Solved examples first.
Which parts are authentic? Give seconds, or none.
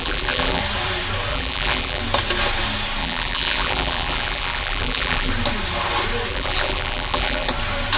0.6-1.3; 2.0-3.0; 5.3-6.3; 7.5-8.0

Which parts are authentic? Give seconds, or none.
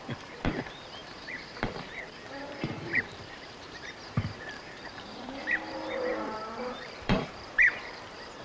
none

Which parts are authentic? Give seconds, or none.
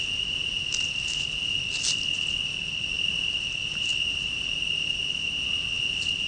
0.0-6.3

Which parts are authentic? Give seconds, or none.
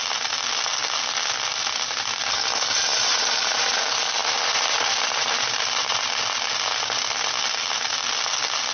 0.0-2.9; 3.8-4.2; 6.0-8.7